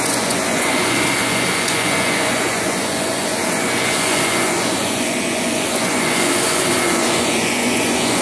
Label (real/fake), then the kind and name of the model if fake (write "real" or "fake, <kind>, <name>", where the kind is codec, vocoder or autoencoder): fake, vocoder, Vocos